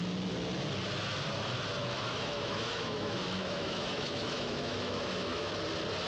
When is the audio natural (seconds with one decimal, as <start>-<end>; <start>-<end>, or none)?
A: 0.0-1.8; 5.5-6.1